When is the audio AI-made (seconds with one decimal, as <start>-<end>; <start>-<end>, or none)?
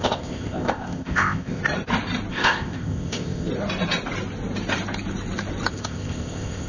0.0-1.6; 2.3-3.5; 5.7-6.7